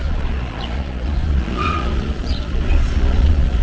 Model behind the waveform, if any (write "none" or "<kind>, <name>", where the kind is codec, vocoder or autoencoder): vocoder, Vocos